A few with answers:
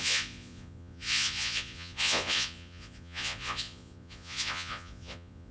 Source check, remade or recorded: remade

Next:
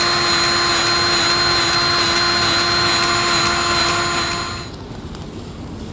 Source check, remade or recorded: recorded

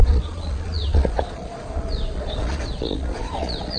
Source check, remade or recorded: remade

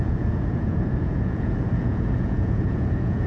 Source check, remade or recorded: remade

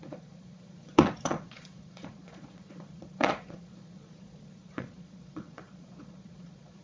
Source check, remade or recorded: remade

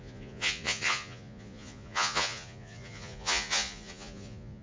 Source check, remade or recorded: remade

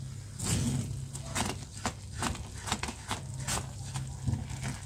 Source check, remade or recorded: recorded